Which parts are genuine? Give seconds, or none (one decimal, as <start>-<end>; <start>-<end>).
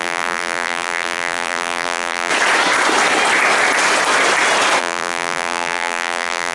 2.3-4.8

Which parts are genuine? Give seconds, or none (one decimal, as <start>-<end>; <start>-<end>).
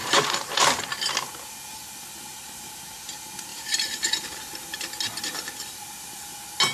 0.8-3.5; 4.5-6.7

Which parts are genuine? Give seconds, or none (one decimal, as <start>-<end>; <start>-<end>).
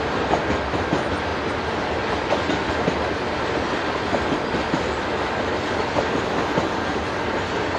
0.0-7.8